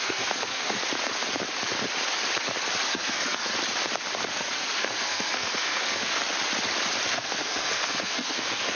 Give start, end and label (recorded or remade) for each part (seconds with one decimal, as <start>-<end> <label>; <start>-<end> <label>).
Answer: 0.0-0.8 remade; 0.8-2.8 recorded; 2.8-3.5 remade; 3.5-4.3 recorded; 4.3-6.2 remade; 6.2-7.1 recorded; 7.1-8.7 remade